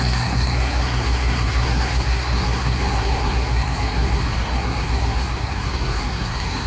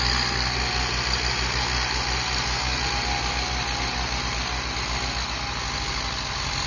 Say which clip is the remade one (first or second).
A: first